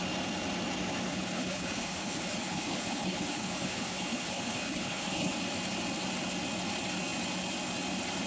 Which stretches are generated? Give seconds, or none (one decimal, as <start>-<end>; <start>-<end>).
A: 1.1-5.3